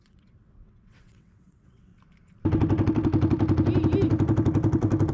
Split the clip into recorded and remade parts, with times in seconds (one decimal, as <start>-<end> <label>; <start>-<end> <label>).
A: 0.0-1.9 remade; 1.9-5.1 recorded